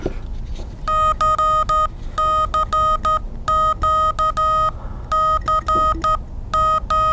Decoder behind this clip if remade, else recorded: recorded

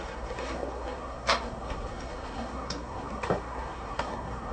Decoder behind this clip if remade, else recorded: remade, codec, SNAC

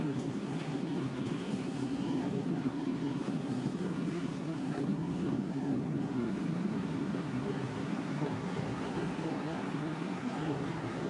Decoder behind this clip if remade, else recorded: remade, codec, SNAC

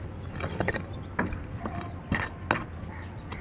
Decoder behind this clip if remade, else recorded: recorded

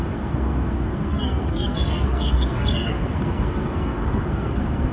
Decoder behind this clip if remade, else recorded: remade, codec, SNAC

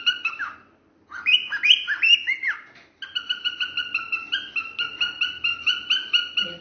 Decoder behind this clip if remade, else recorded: recorded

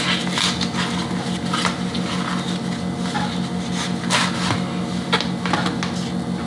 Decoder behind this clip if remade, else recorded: recorded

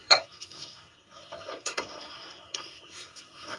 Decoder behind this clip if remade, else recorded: remade, codec, SNAC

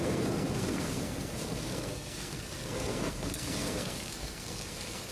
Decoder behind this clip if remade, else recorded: remade, codec, SNAC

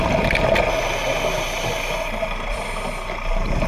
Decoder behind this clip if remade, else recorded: recorded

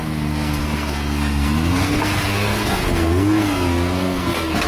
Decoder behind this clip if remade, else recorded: remade, codec, SNAC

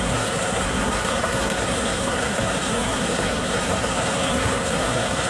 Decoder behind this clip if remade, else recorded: remade, codec, SNAC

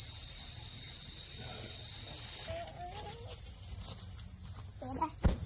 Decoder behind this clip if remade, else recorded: recorded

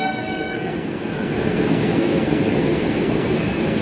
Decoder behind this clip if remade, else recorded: remade, codec, SNAC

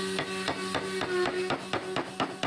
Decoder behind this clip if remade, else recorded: recorded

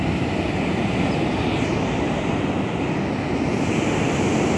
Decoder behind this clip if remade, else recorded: recorded